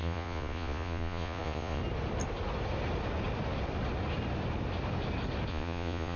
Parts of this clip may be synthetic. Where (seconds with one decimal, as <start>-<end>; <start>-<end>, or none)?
0.0-1.8; 5.5-6.2